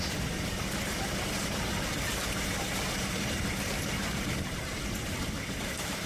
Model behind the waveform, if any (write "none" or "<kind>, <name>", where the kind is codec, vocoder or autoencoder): none